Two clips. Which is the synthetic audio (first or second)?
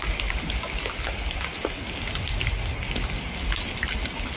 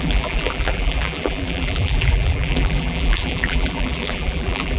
second